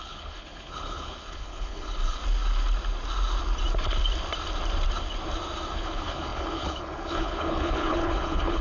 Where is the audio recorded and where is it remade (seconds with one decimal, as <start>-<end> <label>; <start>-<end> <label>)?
0.0-2.2 remade; 2.2-5.8 recorded; 5.8-8.6 remade